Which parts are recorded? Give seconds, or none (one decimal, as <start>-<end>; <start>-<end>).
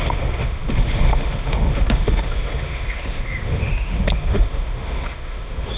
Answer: none